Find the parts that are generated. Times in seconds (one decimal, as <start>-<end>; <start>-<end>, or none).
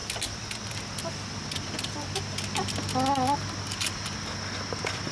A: none